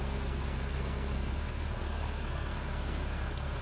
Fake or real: fake